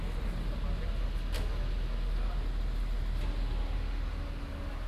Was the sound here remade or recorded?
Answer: recorded